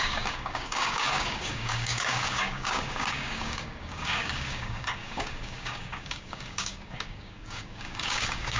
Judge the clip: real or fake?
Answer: fake